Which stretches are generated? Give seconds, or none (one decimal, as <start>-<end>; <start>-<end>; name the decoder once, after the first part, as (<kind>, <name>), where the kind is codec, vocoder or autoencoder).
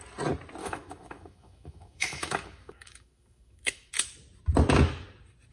0.6-3.9 (autoencoder, DAC-VAE)